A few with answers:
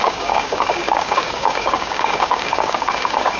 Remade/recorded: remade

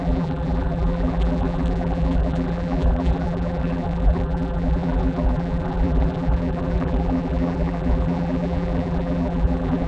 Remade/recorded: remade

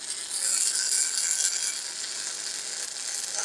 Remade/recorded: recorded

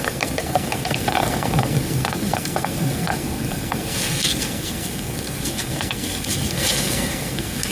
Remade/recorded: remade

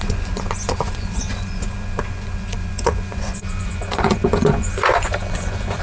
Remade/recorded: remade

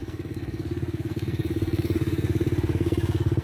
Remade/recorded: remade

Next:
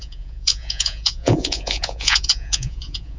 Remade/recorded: remade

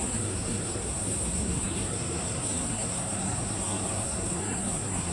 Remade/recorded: remade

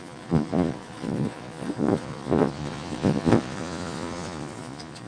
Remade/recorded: remade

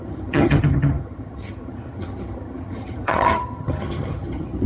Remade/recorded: remade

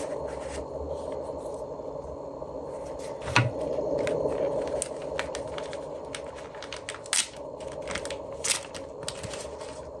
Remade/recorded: recorded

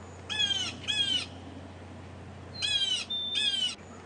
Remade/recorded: recorded